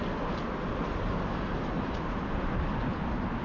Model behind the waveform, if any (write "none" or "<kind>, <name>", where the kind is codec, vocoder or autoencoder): none